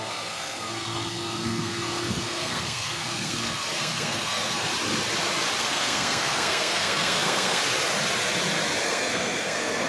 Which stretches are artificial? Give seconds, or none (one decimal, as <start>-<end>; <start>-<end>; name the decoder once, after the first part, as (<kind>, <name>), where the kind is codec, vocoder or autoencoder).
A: 0.0-4.7 (codec, SNAC); 5.6-7.6; 8.8-9.9